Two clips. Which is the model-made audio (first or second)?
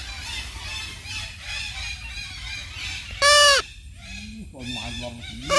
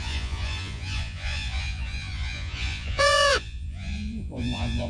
second